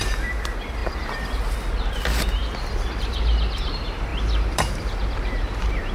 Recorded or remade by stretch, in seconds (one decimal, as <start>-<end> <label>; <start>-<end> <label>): 0.0-2.4 remade; 2.4-3.0 recorded; 3.0-5.9 remade